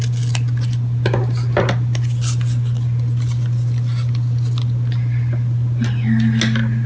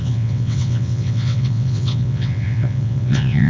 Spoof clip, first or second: second